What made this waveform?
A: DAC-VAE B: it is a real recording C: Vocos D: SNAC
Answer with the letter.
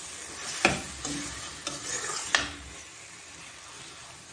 B